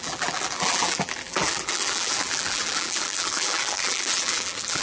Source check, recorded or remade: remade